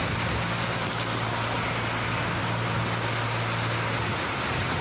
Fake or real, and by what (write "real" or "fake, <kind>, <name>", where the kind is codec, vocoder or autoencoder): real